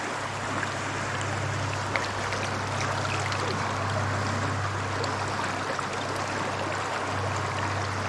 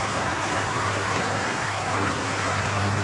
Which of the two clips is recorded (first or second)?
first